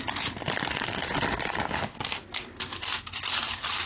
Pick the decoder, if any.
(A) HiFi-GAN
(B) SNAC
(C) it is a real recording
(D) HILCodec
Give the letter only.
C